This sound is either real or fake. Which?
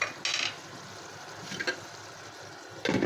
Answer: real